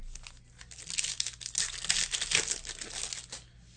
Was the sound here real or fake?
real